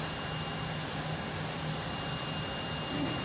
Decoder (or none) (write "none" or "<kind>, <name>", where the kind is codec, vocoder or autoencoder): none